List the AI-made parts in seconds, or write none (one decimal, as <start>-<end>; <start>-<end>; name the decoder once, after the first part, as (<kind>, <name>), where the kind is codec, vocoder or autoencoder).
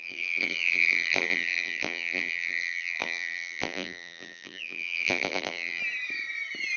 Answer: 0.0-5.8 (vocoder, BigVGAN v2)